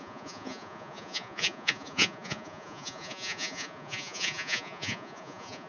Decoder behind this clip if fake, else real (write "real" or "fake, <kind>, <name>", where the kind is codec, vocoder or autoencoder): fake, vocoder, Vocos